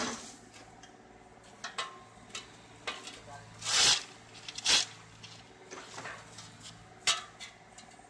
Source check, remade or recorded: recorded